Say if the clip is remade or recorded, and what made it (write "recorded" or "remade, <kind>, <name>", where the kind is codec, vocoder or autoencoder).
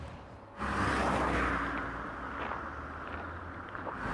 recorded